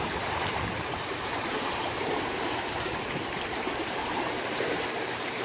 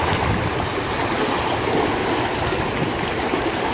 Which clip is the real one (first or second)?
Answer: second